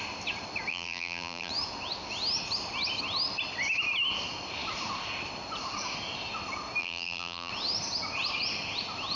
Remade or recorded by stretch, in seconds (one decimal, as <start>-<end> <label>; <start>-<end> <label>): 0.0-0.7 recorded; 0.7-1.5 remade; 1.5-6.8 recorded; 6.8-7.5 remade; 7.5-9.2 recorded